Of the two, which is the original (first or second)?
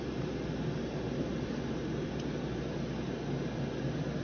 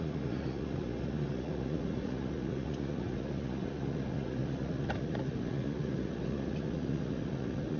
first